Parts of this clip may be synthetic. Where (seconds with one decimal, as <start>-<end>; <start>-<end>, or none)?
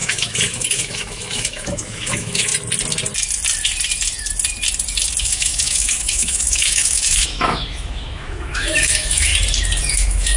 0.0-2.5; 5.2-9.3; 9.9-10.4